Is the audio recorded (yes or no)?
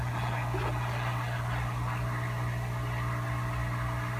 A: yes